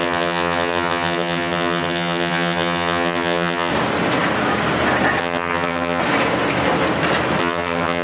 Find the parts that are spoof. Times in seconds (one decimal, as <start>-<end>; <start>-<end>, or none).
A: 0.0-3.7; 5.2-6.0; 7.4-8.0